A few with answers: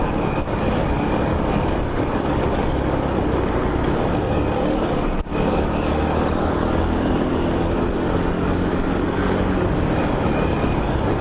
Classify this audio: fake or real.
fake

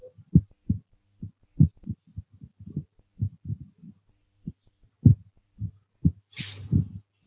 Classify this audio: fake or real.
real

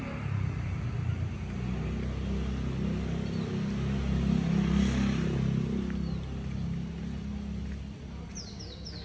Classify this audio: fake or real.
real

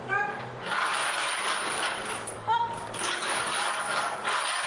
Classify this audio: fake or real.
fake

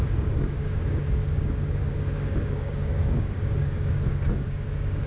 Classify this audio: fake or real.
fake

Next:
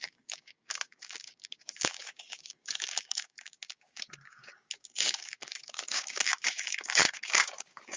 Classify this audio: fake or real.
fake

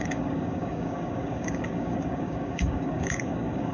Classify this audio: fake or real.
fake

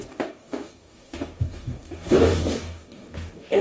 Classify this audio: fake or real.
fake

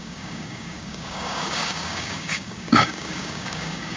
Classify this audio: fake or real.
fake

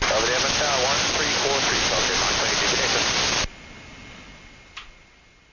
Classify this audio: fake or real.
real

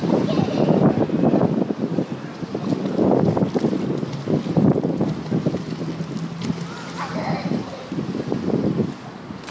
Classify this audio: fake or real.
real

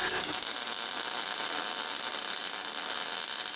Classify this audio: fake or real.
real